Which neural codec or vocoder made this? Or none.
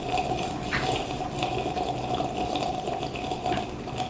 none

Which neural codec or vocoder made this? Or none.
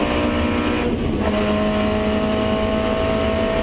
none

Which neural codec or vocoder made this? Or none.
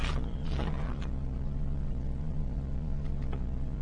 vocoder, Vocos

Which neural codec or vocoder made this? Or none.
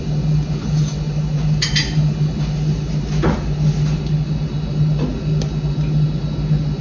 none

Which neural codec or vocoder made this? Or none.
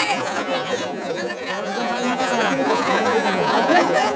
vocoder, Vocos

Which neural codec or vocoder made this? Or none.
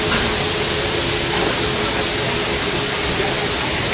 none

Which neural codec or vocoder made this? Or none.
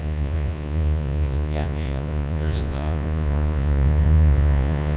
vocoder, Vocos